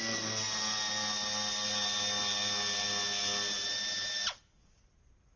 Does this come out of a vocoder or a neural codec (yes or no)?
no